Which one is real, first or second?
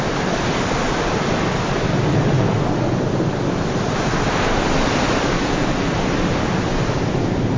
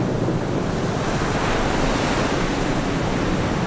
second